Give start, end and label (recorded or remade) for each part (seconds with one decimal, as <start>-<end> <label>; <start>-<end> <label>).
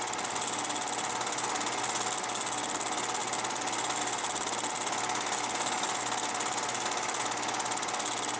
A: 0.0-8.4 recorded